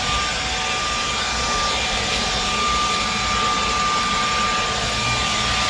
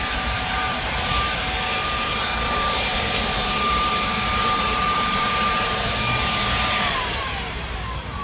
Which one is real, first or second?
first